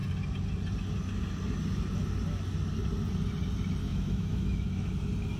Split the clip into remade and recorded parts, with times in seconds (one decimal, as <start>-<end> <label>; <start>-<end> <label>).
0.0-3.9 recorded; 3.9-4.9 remade; 4.9-5.4 recorded

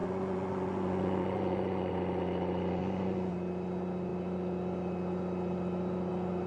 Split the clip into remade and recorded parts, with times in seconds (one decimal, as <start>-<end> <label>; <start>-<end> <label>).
0.0-1.9 remade; 1.9-2.8 recorded; 2.8-3.3 remade; 3.3-6.5 recorded

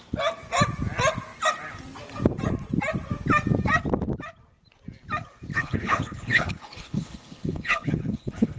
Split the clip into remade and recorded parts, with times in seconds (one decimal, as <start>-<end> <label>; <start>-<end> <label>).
0.0-5.5 recorded; 5.5-8.6 remade

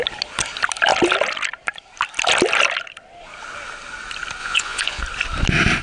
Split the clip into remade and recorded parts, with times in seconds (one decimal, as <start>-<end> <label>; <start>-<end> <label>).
0.0-4.4 recorded; 4.4-5.0 remade; 5.0-5.8 recorded

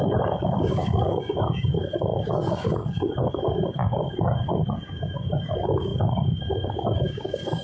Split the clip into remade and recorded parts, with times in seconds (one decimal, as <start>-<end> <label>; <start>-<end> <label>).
0.0-7.6 remade

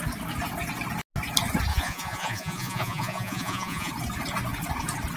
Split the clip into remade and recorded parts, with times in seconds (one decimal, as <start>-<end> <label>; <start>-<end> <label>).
0.0-1.7 recorded; 1.7-3.9 remade; 3.9-5.2 recorded